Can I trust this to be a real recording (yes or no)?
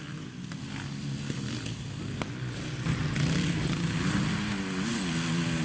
yes